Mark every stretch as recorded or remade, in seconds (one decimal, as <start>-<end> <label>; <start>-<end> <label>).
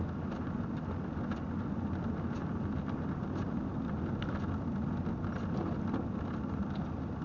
0.0-7.2 recorded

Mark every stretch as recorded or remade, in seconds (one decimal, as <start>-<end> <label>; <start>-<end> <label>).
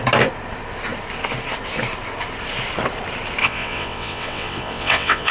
0.0-3.4 recorded; 3.4-5.3 remade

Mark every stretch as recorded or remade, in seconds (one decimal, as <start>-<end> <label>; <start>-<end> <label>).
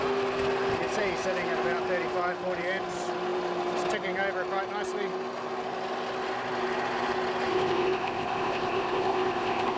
0.0-7.5 recorded; 7.5-9.8 remade